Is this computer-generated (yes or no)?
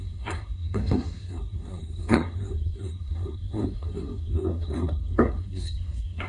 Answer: yes